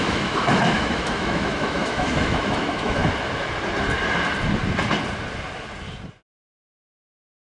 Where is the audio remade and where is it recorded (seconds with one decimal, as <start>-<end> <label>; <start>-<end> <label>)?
0.0-3.0 remade; 3.0-6.8 recorded; 6.8-7.6 remade